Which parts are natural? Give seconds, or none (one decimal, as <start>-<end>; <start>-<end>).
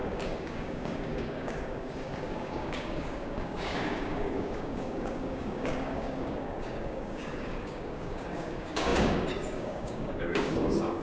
none